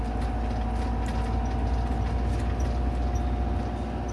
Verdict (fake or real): real